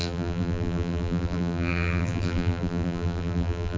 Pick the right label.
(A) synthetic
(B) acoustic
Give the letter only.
A